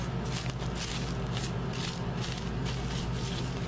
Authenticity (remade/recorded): recorded